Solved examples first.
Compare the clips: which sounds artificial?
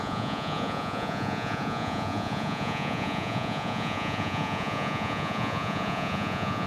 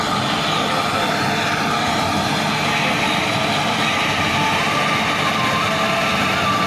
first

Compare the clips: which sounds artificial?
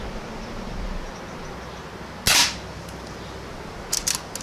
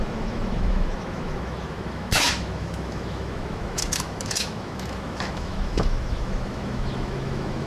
second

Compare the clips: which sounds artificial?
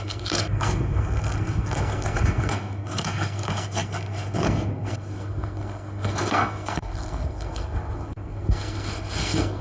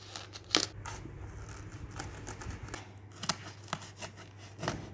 first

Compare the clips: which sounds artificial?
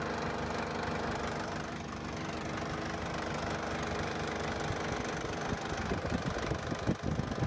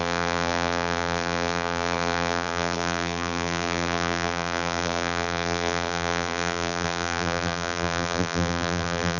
second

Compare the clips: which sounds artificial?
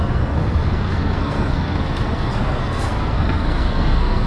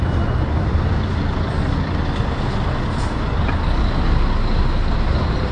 first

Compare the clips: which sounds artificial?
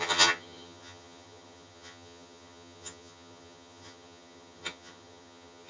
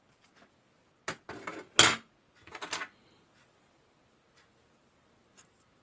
first